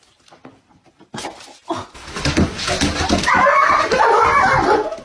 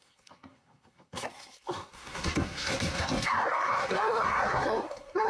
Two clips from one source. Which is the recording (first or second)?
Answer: first